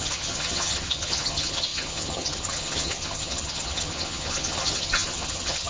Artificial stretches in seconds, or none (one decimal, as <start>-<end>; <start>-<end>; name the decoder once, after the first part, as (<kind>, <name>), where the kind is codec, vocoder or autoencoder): 0.0-5.7 (vocoder, HiFi-GAN)